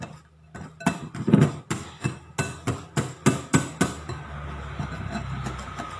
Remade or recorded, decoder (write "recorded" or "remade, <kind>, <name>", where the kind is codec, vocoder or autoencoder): recorded